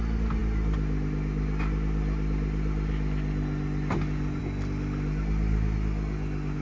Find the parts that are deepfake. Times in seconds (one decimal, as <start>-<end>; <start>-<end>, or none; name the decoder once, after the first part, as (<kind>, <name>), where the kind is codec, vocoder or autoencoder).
none